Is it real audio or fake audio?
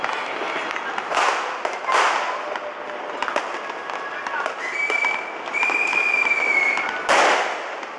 real